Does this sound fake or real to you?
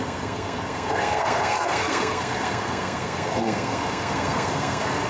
fake